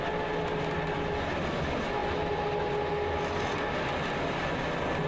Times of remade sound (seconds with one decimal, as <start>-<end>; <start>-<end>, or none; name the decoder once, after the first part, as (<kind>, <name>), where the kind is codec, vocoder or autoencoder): none